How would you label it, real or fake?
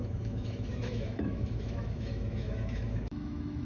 fake